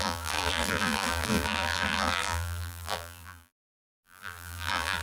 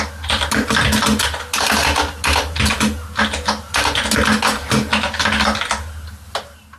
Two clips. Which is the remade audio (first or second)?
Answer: first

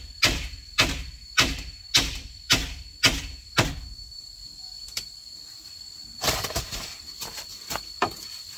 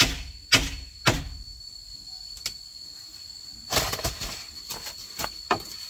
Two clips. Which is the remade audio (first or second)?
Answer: first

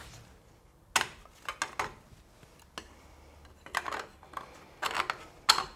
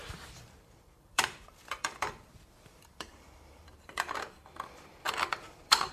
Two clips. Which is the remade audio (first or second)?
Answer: second